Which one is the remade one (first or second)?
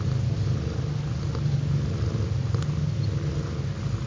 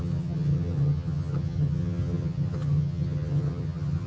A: second